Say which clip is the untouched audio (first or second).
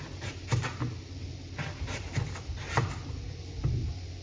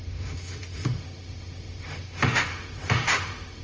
first